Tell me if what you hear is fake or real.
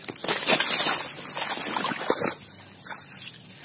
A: real